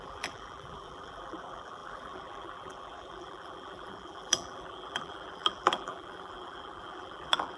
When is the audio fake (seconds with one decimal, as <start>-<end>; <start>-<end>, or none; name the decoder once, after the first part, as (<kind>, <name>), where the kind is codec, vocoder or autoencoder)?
0.0-7.6 (vocoder, BigVGAN v2)